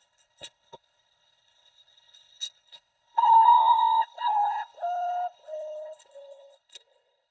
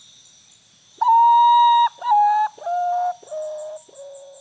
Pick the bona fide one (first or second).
second